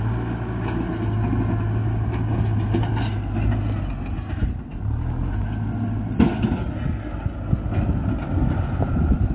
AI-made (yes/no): no